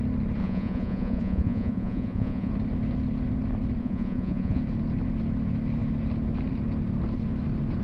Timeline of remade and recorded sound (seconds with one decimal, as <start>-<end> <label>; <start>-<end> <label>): 0.0-0.4 recorded; 0.4-2.5 remade; 2.5-3.8 recorded; 3.8-4.6 remade; 4.6-7.8 recorded